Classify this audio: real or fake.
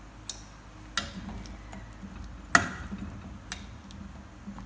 real